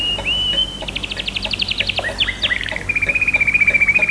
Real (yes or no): yes